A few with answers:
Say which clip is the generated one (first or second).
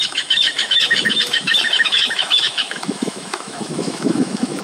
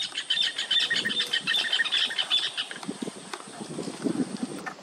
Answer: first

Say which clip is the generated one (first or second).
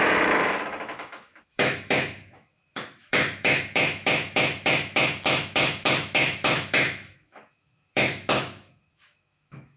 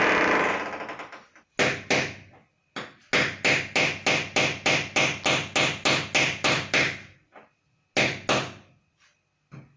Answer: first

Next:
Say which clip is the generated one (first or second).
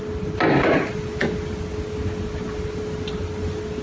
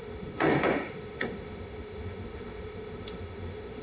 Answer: second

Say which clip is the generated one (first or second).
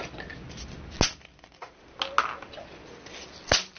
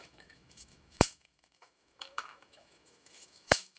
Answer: second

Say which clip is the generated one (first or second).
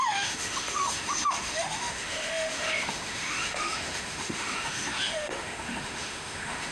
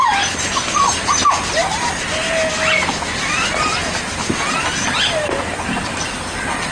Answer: first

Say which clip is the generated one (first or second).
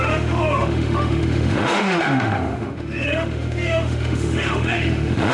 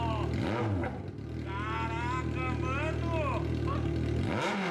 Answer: first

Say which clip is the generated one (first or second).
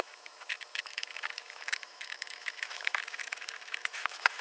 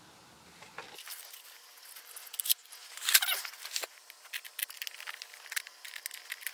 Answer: first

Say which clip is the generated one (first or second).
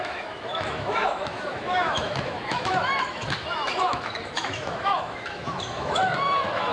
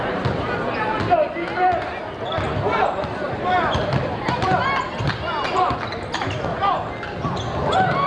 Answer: first